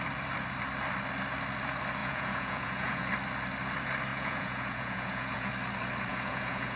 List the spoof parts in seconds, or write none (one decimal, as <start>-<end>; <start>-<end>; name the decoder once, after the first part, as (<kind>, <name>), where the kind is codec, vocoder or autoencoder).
2.0-3.1 (vocoder, Vocos); 4.1-5.5; 6.1-6.8